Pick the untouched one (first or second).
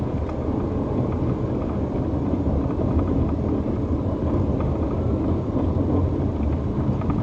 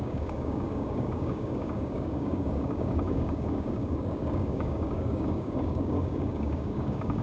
first